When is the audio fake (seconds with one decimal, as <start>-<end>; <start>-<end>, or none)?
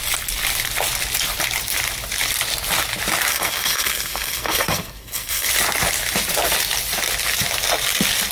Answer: 3.3-5.5